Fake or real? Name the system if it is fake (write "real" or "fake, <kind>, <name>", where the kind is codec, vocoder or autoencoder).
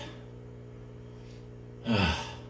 real